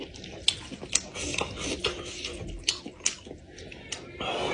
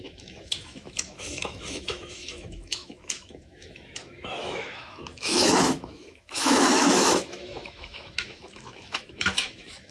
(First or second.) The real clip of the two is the first